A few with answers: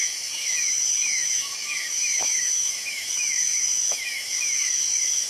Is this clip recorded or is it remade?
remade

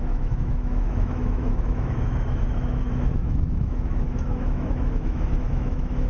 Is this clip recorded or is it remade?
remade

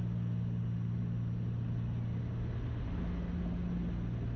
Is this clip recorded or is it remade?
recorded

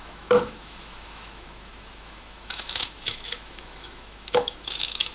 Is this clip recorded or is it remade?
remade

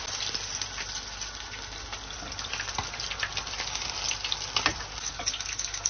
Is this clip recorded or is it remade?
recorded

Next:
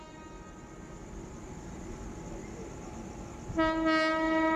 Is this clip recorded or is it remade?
recorded